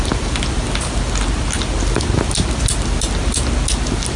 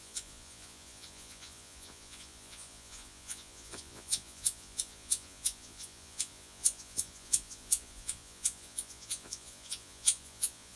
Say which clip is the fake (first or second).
second